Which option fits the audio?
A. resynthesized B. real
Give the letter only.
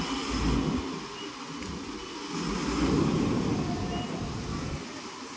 B